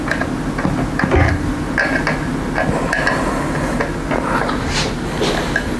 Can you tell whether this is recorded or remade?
recorded